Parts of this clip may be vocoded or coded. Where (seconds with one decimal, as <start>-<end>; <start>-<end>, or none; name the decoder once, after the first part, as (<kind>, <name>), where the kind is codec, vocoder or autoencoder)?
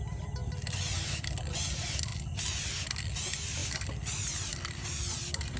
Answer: none